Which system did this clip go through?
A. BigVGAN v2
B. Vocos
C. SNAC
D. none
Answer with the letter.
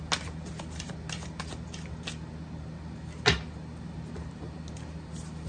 D